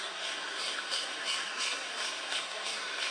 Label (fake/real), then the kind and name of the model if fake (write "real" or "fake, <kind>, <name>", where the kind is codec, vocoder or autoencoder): fake, codec, SNAC